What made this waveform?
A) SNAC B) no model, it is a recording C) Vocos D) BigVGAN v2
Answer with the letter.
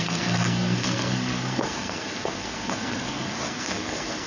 A